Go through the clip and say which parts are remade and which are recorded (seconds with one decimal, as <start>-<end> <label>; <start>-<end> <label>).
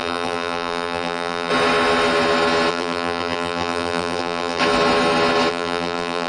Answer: 0.0-1.5 remade; 1.5-2.7 recorded; 2.7-4.6 remade; 4.6-5.5 recorded; 5.5-6.3 remade